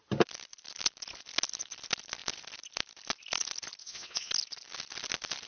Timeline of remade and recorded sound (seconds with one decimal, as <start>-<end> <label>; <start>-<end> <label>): 0.0-3.8 recorded; 3.8-4.3 remade; 4.3-5.5 recorded